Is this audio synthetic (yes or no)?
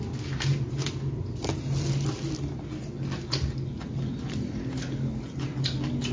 no